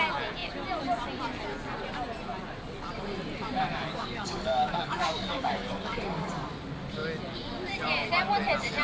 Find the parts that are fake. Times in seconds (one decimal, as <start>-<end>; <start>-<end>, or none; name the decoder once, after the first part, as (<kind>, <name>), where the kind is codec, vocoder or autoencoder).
4.0-6.3 (codec, DAC)